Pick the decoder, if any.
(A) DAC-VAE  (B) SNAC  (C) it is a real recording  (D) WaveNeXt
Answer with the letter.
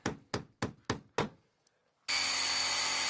C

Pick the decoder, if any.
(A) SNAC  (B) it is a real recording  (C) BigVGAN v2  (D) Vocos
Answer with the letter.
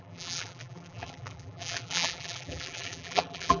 C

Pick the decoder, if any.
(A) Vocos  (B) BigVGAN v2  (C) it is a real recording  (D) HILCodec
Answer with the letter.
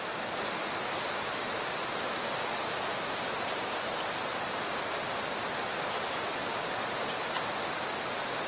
C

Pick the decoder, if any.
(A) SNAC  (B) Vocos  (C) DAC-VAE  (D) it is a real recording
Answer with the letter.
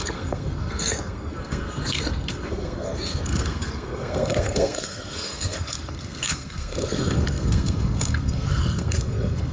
A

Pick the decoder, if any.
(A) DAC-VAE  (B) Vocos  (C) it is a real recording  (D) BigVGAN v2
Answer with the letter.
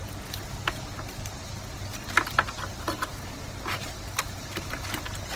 C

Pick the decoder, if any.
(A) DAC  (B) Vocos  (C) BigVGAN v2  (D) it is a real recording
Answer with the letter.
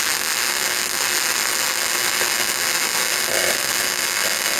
D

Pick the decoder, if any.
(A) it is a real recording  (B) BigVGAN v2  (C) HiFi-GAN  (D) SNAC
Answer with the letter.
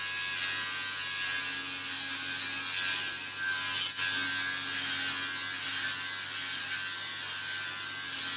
A